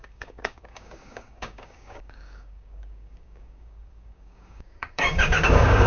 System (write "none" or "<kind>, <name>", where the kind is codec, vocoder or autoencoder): codec, DAC